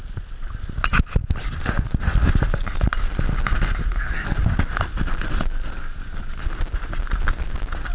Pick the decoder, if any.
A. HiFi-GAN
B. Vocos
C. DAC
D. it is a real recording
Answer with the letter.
D